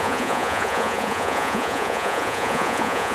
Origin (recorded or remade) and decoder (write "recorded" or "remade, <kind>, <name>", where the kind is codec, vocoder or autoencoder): remade, vocoder, Vocos